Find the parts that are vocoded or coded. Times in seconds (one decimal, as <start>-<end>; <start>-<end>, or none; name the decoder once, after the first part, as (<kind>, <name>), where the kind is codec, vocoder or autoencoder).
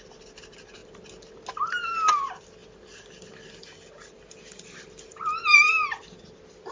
2.6-6.2 (vocoder, BigVGAN v2)